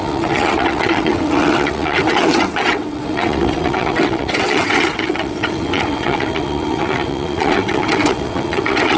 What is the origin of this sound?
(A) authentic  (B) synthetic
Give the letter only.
B